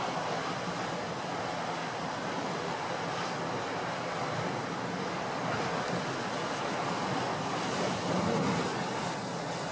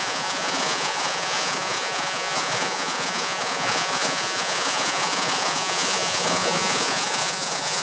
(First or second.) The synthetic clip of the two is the second